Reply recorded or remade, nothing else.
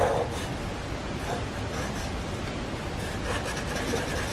recorded